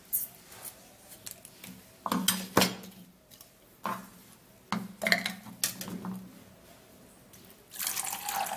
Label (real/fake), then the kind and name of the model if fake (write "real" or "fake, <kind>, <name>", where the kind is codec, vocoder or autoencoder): real